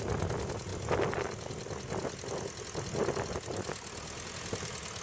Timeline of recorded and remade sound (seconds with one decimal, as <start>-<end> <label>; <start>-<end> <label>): 0.0-5.0 recorded